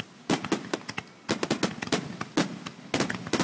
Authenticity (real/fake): real